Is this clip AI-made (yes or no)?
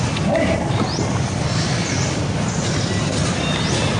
no